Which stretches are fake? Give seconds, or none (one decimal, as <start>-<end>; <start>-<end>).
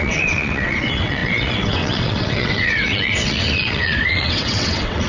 0.0-5.1